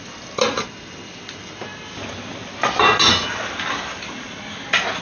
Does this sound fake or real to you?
real